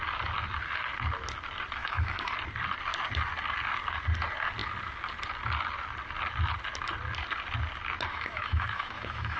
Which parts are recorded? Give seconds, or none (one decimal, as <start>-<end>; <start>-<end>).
0.0-1.8; 2.3-8.1

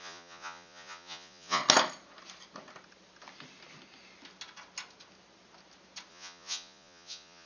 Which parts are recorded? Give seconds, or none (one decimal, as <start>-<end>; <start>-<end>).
1.6-6.1

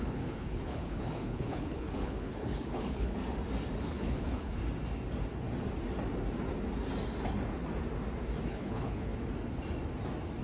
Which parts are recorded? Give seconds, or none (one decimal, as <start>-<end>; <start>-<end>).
3.2-3.8; 4.6-8.5; 9.1-10.4

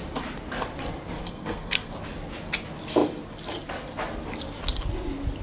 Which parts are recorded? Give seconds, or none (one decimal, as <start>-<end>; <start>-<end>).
0.0-1.2; 1.9-5.4

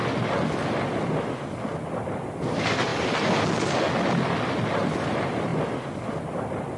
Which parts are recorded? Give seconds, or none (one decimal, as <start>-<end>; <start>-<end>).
0.0-2.0; 2.9-4.5; 5.5-6.1

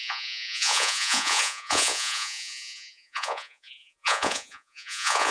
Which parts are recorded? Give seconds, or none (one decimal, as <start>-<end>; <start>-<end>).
none

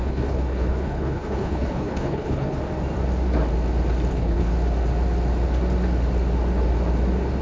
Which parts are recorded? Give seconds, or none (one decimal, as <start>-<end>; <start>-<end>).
2.6-4.1; 4.5-7.4

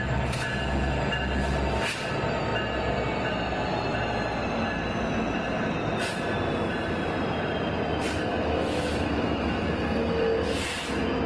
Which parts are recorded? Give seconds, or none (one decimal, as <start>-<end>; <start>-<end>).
0.0-8.3; 9.7-11.3